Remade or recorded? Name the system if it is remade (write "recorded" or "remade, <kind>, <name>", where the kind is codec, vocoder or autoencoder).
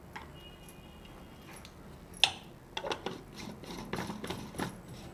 recorded